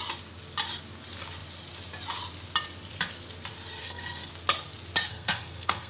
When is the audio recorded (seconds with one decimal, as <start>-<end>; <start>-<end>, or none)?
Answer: 0.0-3.8; 4.3-5.1

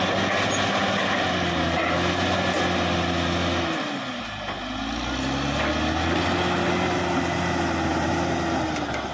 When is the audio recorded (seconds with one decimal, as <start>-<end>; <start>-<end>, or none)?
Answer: 0.0-9.1

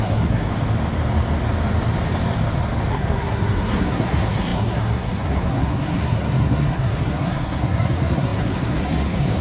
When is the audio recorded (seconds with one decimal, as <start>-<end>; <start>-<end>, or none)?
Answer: 0.5-2.9

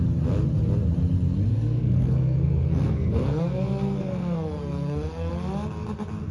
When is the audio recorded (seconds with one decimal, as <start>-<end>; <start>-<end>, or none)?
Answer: 0.0-1.5; 5.3-6.3

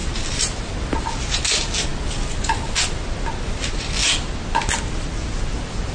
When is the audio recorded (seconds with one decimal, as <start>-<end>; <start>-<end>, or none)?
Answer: 0.0-5.9